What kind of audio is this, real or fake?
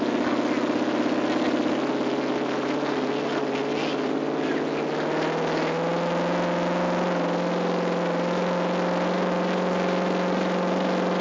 real